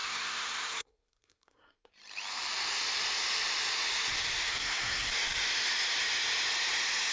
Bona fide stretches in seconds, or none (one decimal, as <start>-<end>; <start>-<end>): 1.9-4.5; 5.1-7.1